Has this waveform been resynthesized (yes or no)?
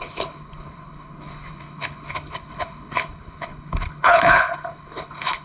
yes